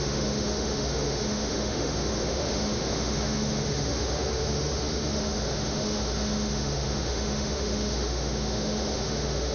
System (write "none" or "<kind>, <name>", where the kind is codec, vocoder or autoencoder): autoencoder, DAC-VAE